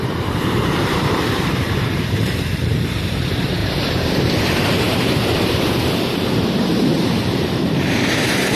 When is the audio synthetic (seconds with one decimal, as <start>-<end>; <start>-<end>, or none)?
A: 0.0-8.6